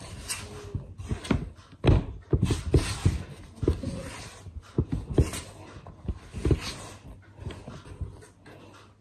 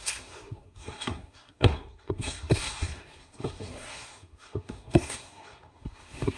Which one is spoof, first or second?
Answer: second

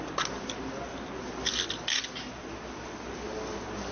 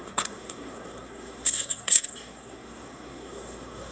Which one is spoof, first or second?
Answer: second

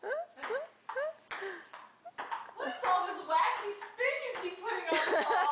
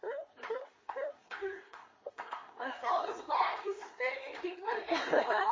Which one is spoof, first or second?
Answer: second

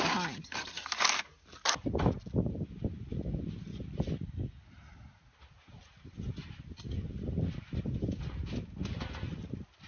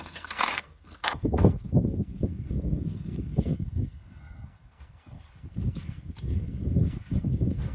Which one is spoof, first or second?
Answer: second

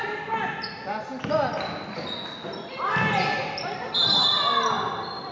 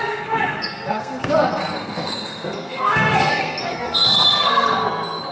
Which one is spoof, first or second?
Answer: second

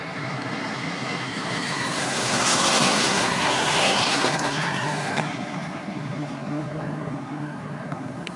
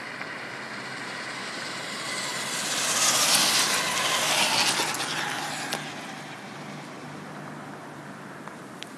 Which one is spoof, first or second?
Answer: first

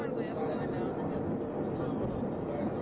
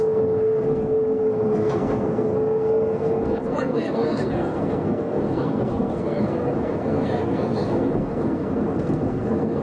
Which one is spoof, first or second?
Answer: second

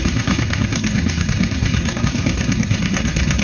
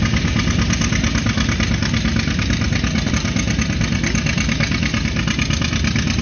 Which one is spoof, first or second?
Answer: first